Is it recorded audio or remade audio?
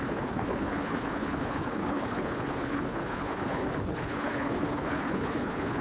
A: remade